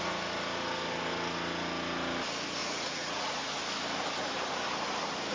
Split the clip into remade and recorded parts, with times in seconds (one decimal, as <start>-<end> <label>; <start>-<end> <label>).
0.0-2.6 recorded; 2.6-3.6 remade; 3.6-5.3 recorded